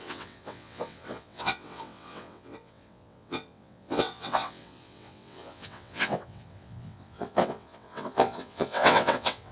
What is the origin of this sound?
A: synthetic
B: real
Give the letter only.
A